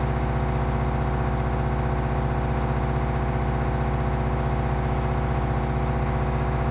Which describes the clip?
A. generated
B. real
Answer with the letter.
A